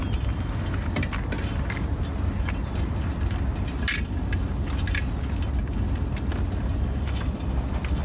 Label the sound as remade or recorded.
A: recorded